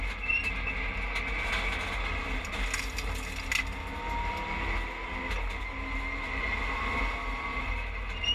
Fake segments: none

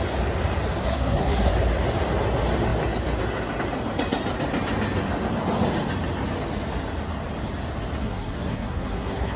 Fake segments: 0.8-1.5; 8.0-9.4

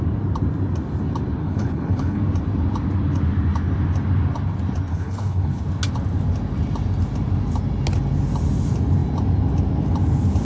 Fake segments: 1.4-2.2; 4.9-5.6

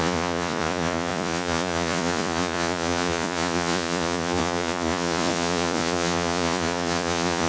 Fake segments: 0.0-7.5